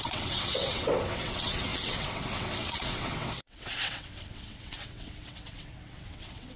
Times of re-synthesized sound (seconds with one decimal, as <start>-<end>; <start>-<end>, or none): 0.0-6.6